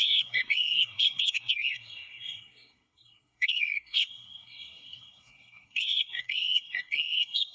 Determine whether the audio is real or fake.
fake